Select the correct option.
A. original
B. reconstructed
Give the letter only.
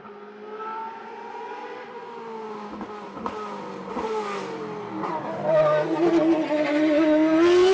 A